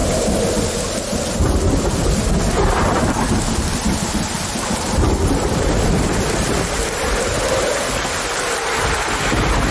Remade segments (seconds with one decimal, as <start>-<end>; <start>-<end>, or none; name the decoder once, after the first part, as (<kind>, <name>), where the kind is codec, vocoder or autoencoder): none